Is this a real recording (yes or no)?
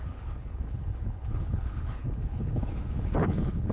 no